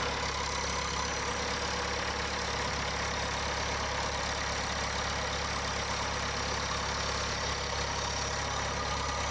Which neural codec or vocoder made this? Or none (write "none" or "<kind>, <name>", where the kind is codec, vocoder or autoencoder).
none